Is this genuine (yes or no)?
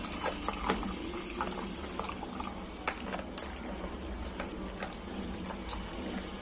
yes